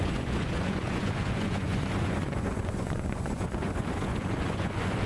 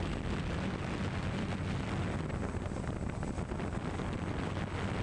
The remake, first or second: first